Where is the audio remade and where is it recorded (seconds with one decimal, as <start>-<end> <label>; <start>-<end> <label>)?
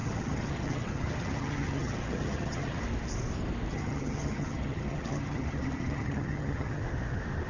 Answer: 0.0-2.8 remade; 2.8-3.7 recorded; 3.7-6.8 remade; 6.8-7.5 recorded